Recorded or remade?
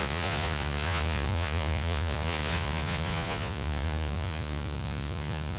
remade